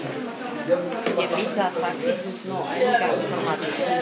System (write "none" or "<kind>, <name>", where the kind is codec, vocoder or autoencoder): none